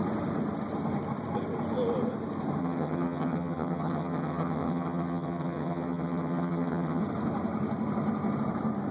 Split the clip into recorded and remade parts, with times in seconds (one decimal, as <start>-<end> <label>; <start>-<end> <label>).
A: 0.0-2.6 recorded; 2.6-7.0 remade; 7.0-8.9 recorded